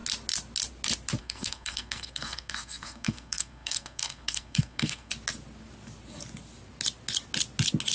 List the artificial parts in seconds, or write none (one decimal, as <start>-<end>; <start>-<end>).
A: 1.2-5.1